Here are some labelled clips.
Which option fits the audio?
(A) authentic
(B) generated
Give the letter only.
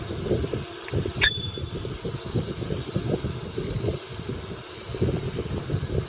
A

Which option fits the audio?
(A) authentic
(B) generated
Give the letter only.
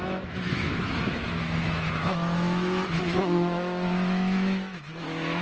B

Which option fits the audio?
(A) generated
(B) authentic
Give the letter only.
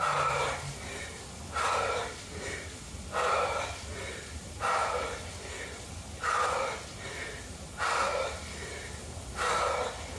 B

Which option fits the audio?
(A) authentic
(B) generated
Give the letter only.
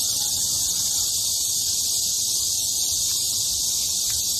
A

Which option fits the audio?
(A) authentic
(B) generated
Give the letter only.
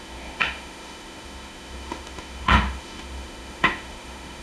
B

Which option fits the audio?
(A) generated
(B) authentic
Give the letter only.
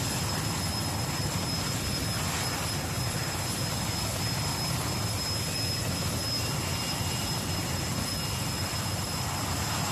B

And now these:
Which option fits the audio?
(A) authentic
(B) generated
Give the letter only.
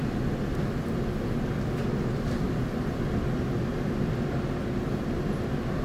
A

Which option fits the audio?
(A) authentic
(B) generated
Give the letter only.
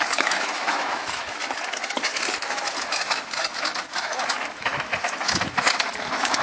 B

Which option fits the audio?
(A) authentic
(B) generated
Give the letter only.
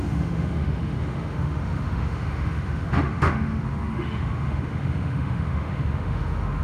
B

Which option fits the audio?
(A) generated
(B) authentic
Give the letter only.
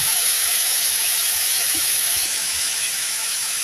A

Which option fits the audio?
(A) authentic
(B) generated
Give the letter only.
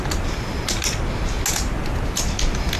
A